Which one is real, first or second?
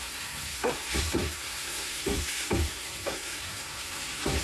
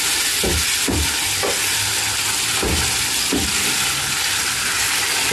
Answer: second